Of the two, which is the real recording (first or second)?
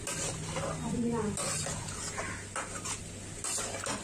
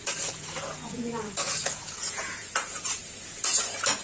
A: first